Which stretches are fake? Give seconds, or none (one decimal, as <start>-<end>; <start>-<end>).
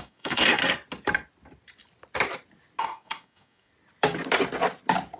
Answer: 0.0-0.6; 2.8-3.7